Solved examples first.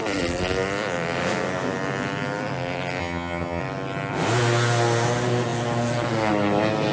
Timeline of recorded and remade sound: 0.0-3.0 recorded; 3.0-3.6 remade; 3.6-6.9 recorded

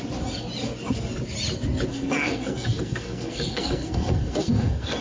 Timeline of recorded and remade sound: 0.0-1.9 recorded; 1.9-5.0 remade